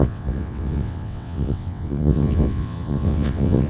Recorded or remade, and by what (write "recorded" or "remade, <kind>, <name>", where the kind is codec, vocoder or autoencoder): remade, vocoder, WaveNeXt